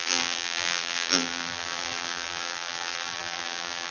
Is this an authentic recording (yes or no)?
no